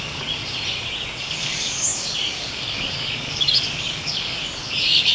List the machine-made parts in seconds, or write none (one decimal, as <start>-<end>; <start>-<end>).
0.0-0.4; 1.2-5.1